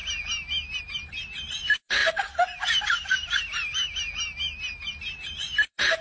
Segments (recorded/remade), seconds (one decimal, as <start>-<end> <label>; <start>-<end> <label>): 0.0-0.8 recorded; 0.8-2.0 remade; 2.0-5.0 recorded; 5.0-6.0 remade